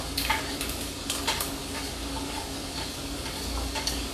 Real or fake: fake